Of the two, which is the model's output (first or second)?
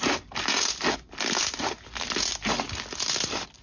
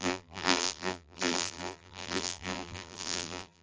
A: second